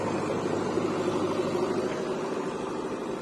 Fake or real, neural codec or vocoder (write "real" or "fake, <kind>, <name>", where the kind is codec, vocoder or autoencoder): real